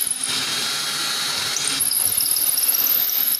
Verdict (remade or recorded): recorded